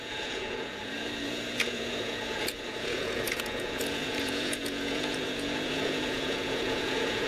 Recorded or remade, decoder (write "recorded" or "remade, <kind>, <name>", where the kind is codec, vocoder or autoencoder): remade, vocoder, Vocos